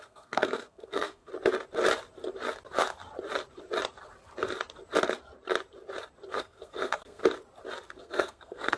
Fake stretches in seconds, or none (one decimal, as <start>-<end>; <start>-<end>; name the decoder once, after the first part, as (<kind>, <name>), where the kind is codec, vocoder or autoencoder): 0.0-1.3 (codec, SNAC); 6.3-7.2; 8.0-8.8